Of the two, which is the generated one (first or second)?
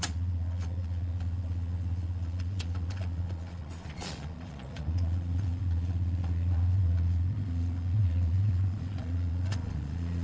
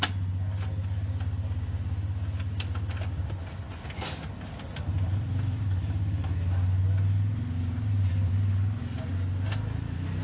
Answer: first